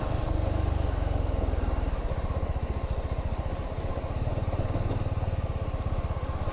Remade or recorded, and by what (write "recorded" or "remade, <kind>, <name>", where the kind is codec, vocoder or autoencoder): recorded